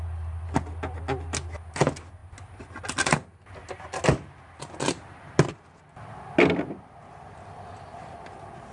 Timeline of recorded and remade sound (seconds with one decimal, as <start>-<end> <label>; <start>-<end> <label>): 0.0-8.7 recorded